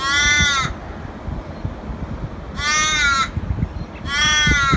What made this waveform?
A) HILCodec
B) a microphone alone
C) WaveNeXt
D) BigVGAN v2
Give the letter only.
B